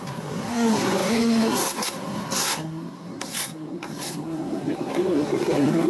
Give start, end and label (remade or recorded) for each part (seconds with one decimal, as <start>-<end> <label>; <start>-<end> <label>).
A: 0.0-5.9 remade